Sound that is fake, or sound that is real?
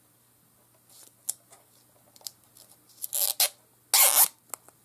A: real